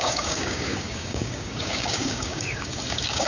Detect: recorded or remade remade